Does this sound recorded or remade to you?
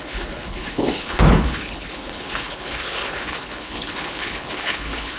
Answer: remade